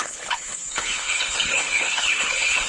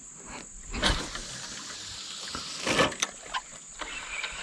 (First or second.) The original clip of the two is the second